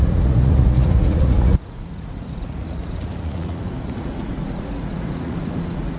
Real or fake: fake